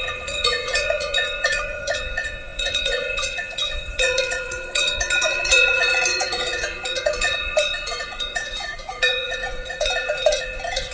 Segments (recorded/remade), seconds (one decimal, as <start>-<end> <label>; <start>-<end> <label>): 0.0-10.9 remade